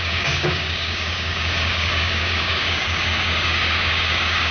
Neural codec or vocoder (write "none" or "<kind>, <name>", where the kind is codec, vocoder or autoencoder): codec, DAC